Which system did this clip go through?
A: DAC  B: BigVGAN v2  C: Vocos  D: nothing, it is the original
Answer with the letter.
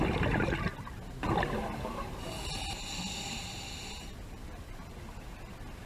D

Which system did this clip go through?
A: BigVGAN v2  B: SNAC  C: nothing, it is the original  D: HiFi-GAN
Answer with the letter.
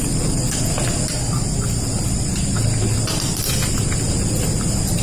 C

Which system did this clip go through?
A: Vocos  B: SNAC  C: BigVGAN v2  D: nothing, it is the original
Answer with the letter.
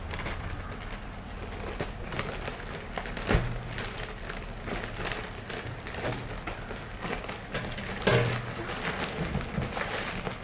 D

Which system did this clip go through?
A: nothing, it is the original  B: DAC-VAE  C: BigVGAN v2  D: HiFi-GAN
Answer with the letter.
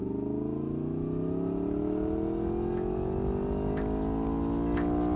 A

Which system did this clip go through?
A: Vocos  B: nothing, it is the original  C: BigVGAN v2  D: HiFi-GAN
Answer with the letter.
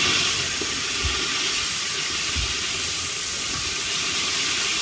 C